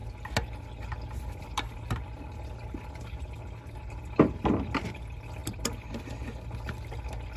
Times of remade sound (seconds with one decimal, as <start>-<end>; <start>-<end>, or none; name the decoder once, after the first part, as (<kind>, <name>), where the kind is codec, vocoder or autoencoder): none